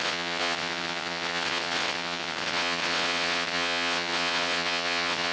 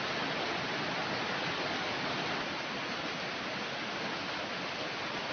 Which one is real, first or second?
second